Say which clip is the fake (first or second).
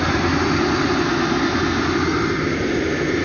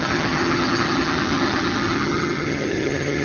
second